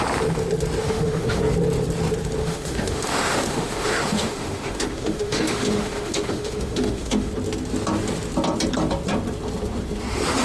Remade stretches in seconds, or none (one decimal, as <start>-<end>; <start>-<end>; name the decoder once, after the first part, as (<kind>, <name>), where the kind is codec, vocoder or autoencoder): 0.8-1.4 (autoencoder, DAC-VAE); 2.4-7.3